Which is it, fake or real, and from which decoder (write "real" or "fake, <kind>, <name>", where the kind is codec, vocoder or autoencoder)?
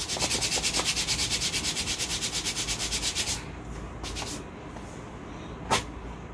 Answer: real